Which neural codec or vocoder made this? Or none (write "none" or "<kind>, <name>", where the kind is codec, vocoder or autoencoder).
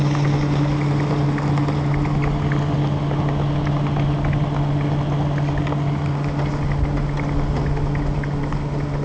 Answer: none